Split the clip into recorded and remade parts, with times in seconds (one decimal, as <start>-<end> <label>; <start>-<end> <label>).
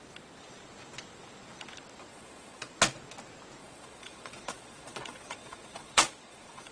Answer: 0.0-2.1 recorded; 2.1-2.7 remade; 2.7-3.6 recorded; 3.6-6.7 remade